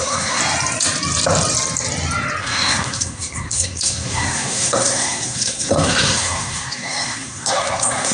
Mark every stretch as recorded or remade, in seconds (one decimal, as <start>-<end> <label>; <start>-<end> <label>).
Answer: 0.0-0.4 remade; 0.4-2.4 recorded; 2.4-8.1 remade